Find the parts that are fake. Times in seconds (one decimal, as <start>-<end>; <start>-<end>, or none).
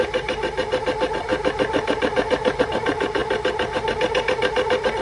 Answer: 1.3-2.6; 3.2-4.0